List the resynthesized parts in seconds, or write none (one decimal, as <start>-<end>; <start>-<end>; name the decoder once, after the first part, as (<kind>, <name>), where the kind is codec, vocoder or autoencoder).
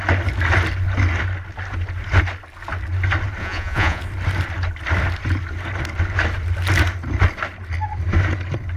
3.4-4.0 (vocoder, Vocos)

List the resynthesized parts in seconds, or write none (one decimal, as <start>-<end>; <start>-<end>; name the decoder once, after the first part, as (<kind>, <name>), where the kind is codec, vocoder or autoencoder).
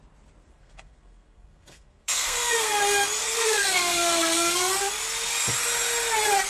0.4-2.8 (codec, SNAC); 3.2-4.9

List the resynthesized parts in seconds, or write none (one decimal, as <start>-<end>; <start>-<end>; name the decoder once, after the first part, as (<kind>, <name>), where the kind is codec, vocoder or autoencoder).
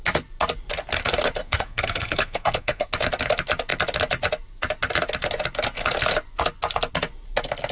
1.4-2.9 (codec, SNAC)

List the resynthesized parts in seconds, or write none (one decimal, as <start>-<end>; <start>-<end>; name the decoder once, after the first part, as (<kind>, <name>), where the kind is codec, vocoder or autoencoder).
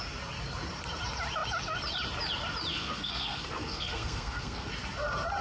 2.7-4.7 (codec, SNAC)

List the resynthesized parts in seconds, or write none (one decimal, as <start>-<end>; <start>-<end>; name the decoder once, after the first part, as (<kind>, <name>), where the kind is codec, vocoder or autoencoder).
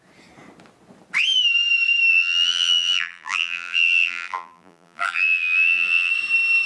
2.1-6.1 (vocoder, BigVGAN v2)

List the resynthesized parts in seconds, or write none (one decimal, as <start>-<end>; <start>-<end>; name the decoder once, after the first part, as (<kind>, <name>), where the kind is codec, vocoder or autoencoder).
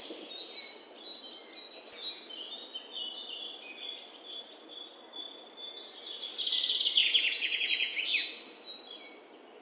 7.0-8.0 (vocoder, Vocos)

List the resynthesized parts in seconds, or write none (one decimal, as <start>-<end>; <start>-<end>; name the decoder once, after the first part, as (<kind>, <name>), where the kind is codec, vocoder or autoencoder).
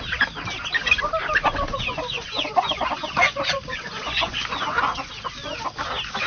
1.4-5.1 (vocoder, Vocos)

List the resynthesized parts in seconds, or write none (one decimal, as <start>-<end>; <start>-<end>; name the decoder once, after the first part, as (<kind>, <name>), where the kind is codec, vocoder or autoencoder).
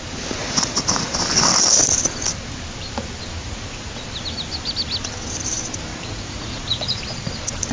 0.4-1.1 (vocoder, Vocos); 3.4-3.9; 5.9-7.0